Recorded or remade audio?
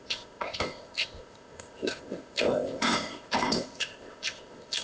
remade